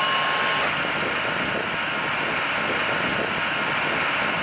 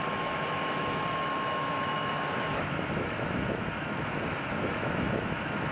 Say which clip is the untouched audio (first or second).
first